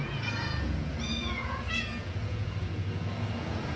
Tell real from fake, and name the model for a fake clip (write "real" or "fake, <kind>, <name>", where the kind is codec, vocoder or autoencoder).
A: fake, vocoder, Vocos